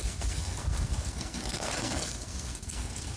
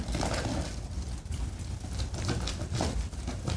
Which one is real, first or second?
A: second